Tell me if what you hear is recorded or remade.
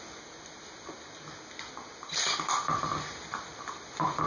recorded